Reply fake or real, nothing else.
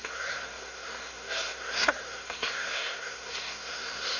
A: fake